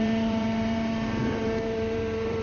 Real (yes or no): no